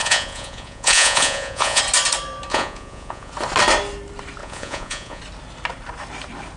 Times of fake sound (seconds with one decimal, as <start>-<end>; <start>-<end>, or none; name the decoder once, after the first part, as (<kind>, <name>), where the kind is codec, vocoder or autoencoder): 0.0-1.8 (vocoder, Vocos); 2.5-3.3; 4.4-5.2